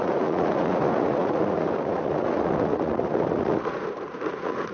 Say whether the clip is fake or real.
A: fake